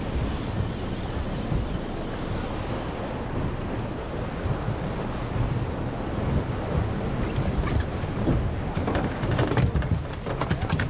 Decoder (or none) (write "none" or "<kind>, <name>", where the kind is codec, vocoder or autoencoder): none